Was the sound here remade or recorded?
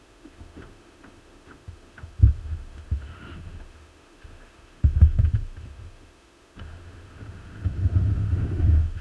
remade